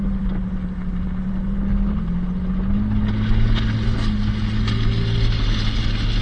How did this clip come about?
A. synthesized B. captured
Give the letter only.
B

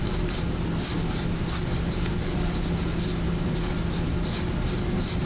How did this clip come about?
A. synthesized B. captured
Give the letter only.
B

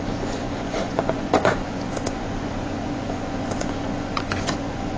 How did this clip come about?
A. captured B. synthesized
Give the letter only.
B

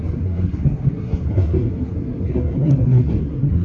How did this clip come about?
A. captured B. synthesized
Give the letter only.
B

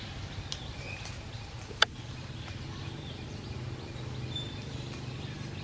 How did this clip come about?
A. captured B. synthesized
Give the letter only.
A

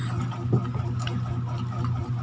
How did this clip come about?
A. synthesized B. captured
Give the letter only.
B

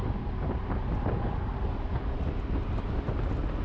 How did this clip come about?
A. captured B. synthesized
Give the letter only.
A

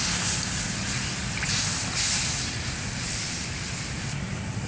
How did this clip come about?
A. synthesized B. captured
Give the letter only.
B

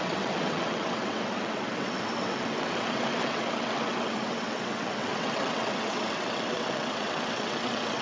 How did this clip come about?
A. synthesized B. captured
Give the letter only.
A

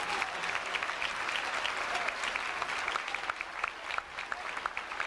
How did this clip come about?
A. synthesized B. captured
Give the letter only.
B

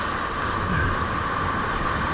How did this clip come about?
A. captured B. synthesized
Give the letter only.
A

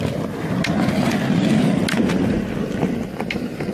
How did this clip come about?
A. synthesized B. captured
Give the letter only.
B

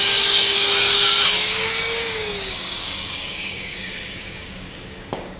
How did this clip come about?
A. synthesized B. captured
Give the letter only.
A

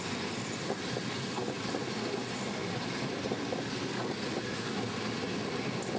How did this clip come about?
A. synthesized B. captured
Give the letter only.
B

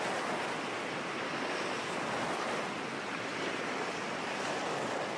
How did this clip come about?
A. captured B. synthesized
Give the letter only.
A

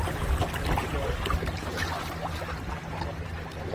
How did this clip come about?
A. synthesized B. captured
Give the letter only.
B